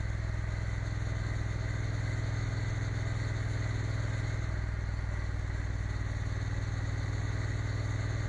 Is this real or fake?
real